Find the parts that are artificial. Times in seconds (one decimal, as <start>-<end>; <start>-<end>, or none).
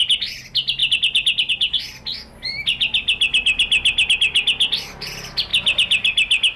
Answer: none